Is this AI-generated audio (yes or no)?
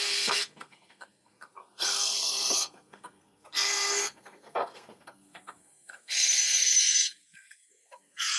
yes